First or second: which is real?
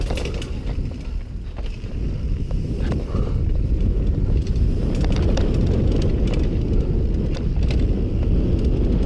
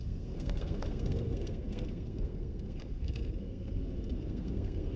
first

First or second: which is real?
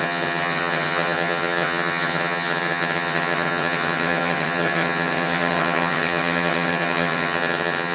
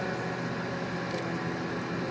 second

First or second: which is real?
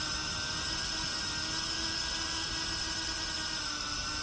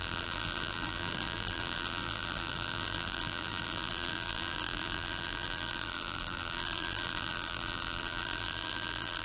first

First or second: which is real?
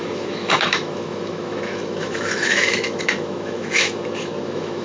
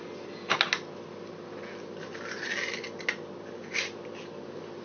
second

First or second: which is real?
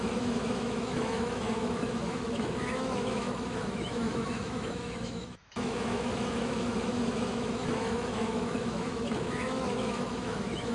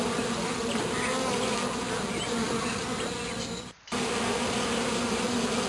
second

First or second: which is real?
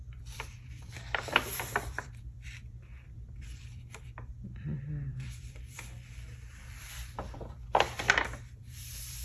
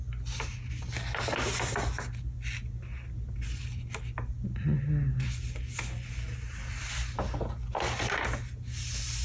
second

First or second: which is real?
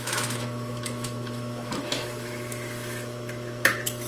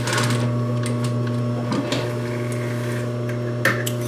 second